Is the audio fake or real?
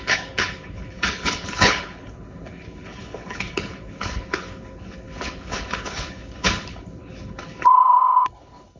fake